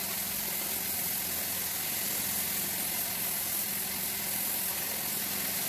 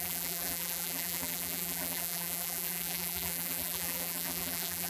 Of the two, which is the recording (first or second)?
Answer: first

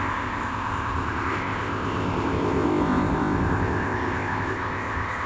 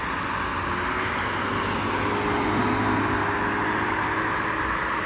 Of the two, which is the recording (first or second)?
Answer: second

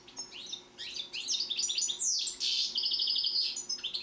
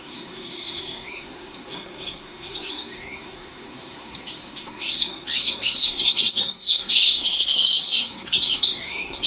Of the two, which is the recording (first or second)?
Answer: first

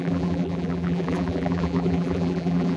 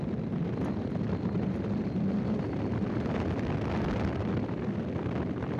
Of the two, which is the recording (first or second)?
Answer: second